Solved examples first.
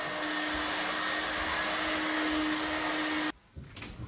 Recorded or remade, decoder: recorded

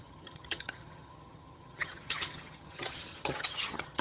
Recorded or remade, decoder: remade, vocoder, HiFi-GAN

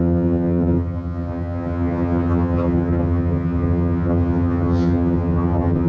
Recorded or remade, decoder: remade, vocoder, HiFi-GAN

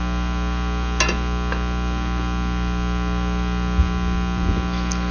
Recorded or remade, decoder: recorded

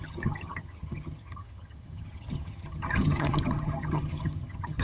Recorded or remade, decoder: remade, vocoder, HiFi-GAN